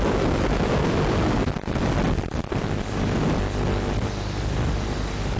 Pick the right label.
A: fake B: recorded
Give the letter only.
B